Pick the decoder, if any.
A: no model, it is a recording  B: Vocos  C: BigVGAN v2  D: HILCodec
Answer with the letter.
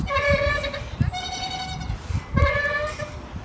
A